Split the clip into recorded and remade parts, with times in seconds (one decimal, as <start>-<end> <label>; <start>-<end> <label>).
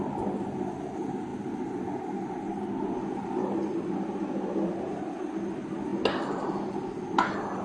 0.0-7.6 recorded